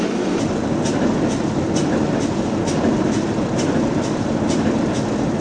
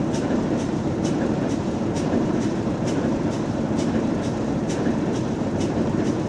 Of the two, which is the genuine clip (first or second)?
first